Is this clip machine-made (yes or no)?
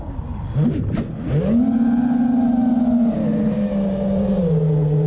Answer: no